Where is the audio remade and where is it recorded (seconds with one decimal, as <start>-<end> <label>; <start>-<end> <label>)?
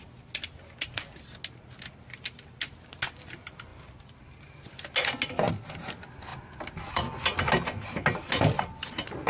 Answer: 0.0-9.3 recorded